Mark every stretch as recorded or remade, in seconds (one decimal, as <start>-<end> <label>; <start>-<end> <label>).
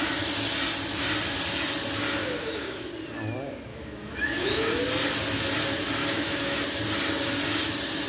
0.0-2.2 recorded; 2.2-2.9 remade; 2.9-3.7 recorded; 3.7-4.8 remade; 4.8-6.0 recorded; 6.0-6.6 remade; 6.6-8.1 recorded